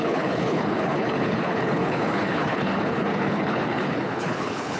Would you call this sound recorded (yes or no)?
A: no